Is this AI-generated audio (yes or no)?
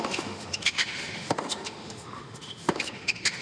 yes